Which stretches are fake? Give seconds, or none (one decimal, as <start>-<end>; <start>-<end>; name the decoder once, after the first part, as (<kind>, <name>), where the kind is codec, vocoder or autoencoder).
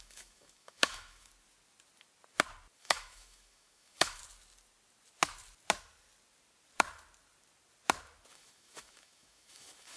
0.0-1.3 (autoencoder, DAC-VAE); 2.8-4.2; 8.3-10.0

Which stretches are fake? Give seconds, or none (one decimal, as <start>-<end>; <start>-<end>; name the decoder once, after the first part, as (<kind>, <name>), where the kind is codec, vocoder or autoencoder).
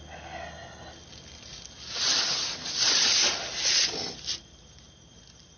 none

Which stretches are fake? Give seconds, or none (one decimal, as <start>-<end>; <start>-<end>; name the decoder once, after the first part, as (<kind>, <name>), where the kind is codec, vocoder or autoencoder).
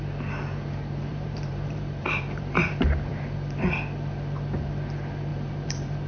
1.1-2.7 (vocoder, BigVGAN v2); 3.1-3.6; 5.3-6.1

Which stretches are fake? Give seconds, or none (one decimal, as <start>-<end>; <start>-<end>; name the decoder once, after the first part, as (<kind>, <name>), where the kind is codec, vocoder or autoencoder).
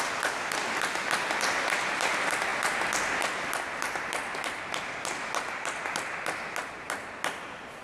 none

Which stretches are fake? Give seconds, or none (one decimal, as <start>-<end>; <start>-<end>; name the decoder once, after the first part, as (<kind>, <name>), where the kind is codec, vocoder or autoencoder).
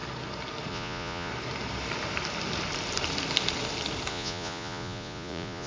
0.7-1.3 (vocoder, Vocos); 4.1-5.7